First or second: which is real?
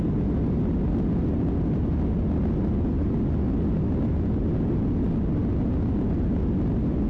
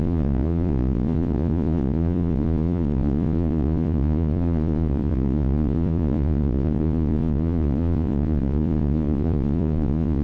first